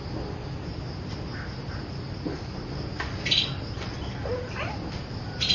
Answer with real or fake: real